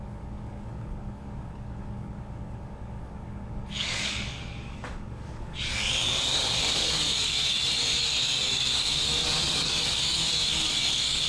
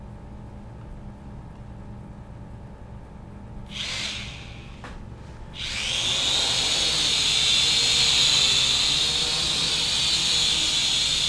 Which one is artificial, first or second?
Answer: first